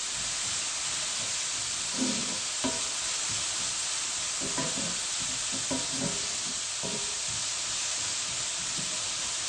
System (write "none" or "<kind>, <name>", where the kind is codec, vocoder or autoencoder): none